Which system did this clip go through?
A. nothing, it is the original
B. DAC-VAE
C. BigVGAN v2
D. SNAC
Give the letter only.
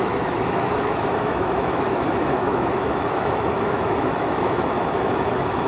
B